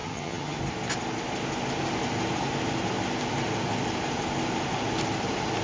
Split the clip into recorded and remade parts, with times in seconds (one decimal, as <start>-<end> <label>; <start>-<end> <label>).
0.0-0.6 remade; 0.6-5.6 recorded

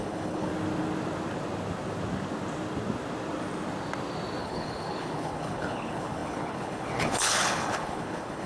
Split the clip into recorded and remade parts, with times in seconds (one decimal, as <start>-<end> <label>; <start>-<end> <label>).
0.0-0.5 remade; 0.5-4.4 recorded; 4.4-8.5 remade

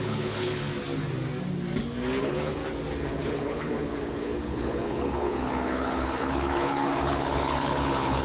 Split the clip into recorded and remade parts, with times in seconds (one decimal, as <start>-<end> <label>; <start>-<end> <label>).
0.0-0.7 remade; 0.7-2.2 recorded; 2.2-2.6 remade; 2.6-3.1 recorded; 3.1-8.2 remade

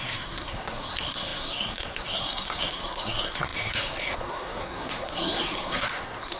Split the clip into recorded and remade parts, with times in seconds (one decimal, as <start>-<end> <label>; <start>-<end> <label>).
0.0-6.4 remade

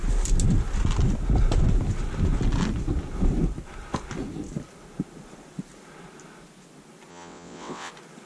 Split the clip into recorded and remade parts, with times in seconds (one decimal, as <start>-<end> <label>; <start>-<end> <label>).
0.0-7.1 recorded; 7.1-7.9 remade; 7.9-8.3 recorded